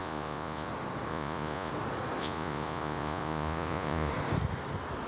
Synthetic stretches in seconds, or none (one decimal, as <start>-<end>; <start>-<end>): 0.0-0.7; 1.1-1.7; 2.2-4.1